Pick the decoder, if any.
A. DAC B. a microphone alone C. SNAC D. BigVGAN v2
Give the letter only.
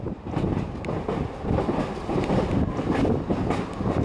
B